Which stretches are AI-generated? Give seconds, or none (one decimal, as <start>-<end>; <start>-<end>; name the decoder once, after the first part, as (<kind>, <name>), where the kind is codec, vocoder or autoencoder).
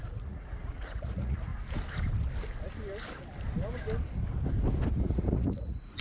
0.0-1.5 (vocoder, Vocos); 5.0-6.0